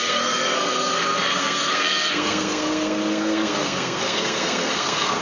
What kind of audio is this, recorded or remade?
remade